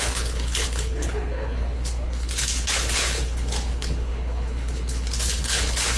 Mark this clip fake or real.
fake